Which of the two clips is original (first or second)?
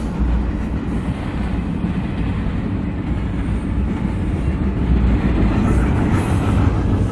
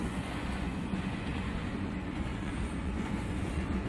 first